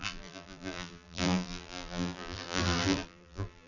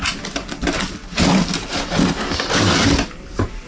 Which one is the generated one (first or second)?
first